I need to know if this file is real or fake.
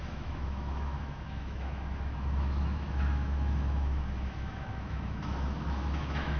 fake